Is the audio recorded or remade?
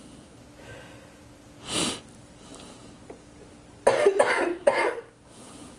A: recorded